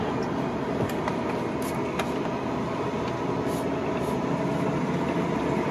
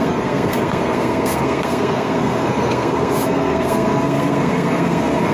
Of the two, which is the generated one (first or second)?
second